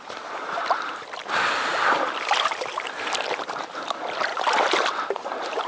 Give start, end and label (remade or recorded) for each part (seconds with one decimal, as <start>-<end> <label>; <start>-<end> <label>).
0.0-1.2 remade; 1.2-3.6 recorded; 3.6-4.3 remade; 4.3-5.1 recorded; 5.1-5.7 remade